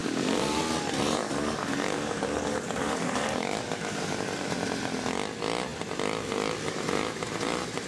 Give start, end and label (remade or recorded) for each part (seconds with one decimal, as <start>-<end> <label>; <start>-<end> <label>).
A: 0.0-0.6 remade; 0.6-1.2 recorded; 1.2-4.5 remade; 4.5-7.9 recorded